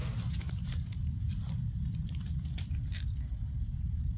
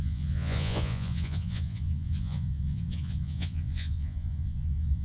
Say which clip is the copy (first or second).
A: second